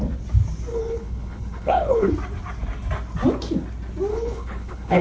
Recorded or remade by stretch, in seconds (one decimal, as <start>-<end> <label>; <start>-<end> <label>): 0.0-0.7 recorded; 0.7-2.1 remade; 2.1-4.1 recorded; 4.1-5.0 remade